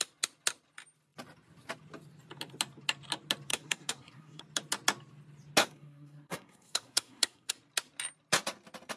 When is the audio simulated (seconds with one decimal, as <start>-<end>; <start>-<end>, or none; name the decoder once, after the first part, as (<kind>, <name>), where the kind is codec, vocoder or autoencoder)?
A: 3.5-4.4 (codec, SNAC); 5.6-7.5

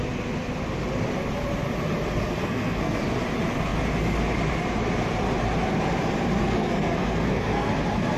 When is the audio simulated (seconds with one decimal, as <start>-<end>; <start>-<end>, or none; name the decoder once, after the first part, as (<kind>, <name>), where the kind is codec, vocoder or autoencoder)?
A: 2.4-3.0 (codec, SNAC); 6.4-7.7

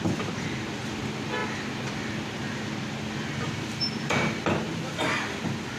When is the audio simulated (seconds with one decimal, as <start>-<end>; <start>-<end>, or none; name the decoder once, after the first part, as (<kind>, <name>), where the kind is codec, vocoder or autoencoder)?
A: none

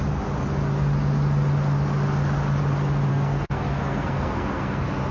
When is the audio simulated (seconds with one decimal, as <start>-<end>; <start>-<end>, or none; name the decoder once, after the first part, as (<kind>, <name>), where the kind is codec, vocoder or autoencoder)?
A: 3.1-5.1 (codec, SNAC)